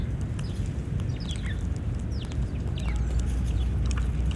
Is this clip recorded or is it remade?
recorded